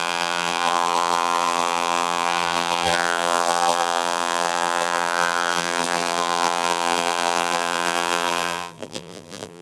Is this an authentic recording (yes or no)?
no